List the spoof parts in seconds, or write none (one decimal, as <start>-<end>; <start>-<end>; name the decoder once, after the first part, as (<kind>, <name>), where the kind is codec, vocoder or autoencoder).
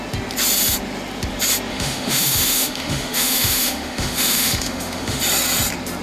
1.7-5.2 (autoencoder, DAC-VAE)